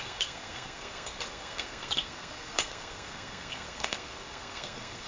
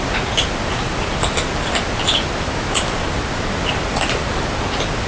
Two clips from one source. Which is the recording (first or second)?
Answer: second